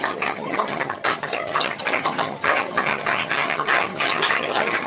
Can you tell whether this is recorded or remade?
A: remade